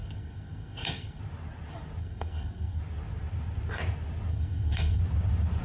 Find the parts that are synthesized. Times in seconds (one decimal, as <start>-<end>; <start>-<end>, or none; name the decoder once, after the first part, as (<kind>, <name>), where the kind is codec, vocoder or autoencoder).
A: 0.0-1.2 (codec, SNAC); 2.0-2.8; 4.3-5.0